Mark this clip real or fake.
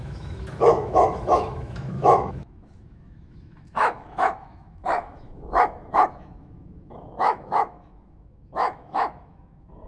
fake